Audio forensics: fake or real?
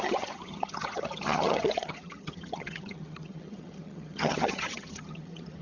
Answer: fake